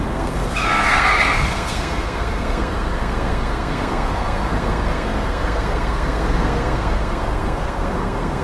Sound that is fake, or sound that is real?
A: fake